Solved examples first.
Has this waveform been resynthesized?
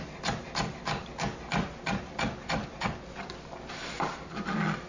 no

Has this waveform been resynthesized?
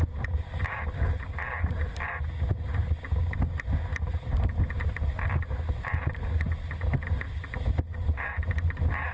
no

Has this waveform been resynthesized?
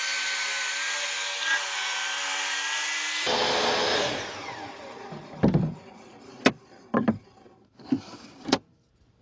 no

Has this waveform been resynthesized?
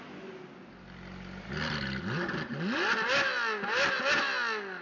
no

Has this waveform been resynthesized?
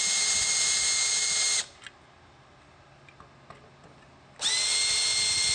no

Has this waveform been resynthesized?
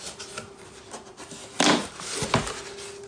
no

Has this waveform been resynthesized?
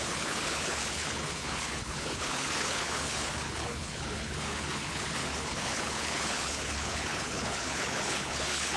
yes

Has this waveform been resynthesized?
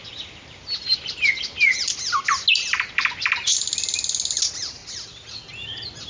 no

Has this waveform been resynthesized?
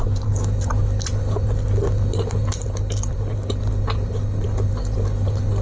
no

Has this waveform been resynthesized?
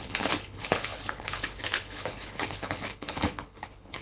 yes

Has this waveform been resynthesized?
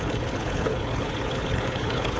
yes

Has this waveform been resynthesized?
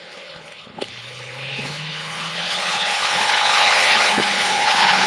yes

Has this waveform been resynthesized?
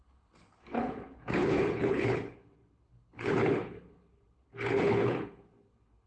yes